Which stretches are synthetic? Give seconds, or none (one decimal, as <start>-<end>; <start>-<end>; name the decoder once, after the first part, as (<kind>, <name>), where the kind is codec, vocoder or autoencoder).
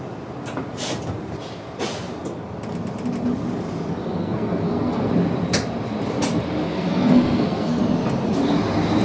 4.0-5.1 (codec, SNAC); 6.6-7.8